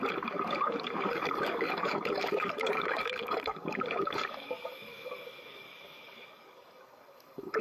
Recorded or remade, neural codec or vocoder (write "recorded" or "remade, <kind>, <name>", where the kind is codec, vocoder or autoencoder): remade, codec, DAC